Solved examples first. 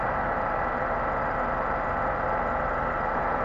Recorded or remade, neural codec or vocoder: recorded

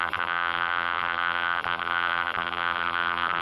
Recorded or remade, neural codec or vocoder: remade, vocoder, BigVGAN v2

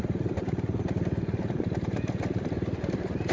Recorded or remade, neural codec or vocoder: remade, vocoder, BigVGAN v2